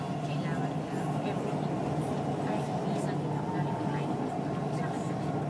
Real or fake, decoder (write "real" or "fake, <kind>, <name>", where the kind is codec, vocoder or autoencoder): real